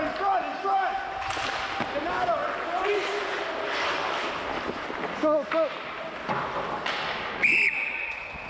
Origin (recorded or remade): recorded